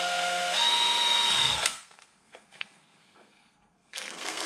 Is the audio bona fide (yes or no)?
no